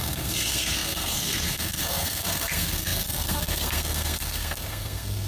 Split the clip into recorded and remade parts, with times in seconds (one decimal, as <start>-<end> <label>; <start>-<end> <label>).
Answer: 0.0-5.3 remade

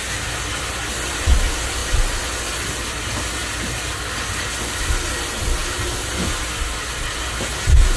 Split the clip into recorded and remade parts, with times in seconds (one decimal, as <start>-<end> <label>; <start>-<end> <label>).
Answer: 0.0-8.0 recorded

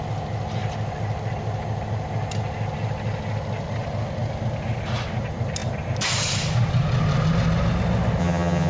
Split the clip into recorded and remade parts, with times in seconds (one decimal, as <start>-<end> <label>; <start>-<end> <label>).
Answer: 0.0-8.2 recorded; 8.2-8.7 remade

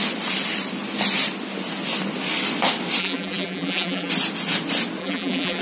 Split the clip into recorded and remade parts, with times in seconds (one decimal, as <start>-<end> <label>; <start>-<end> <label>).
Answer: 0.0-3.0 recorded; 3.0-4.1 remade; 4.1-5.0 recorded; 5.0-5.6 remade

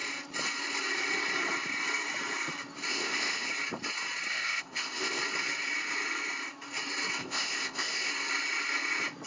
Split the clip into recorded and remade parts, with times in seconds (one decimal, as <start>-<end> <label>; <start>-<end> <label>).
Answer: 0.0-2.9 recorded; 2.9-3.5 remade; 3.5-4.3 recorded; 4.3-5.2 remade; 5.2-7.2 recorded; 7.2-8.1 remade; 8.1-9.3 recorded